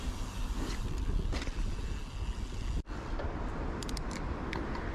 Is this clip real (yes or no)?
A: yes